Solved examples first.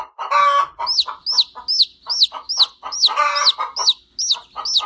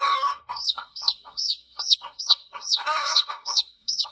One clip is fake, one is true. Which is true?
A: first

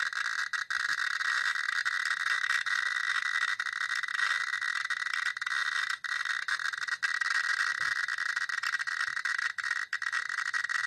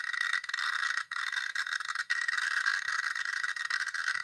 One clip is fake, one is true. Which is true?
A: first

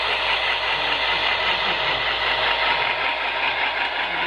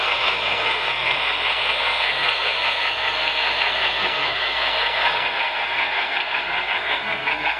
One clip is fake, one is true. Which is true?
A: first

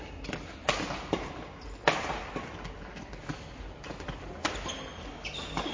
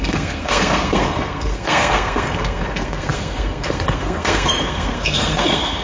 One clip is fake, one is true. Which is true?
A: first